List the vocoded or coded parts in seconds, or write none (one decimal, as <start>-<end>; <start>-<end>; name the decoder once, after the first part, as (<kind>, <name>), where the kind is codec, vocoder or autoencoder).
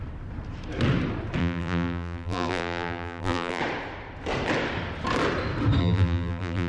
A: 1.4-3.6 (vocoder, BigVGAN v2); 5.8-6.7